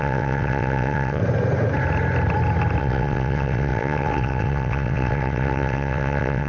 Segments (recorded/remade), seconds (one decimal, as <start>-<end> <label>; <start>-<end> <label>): 0.0-1.2 remade; 1.2-2.8 recorded; 2.8-6.5 remade